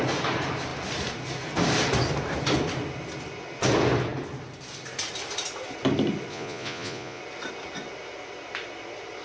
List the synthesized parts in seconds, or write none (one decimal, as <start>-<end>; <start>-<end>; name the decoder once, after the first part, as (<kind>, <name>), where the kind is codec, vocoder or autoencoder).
6.3-7.2 (vocoder, Vocos)